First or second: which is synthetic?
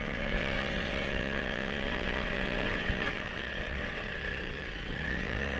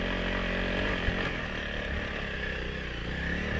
first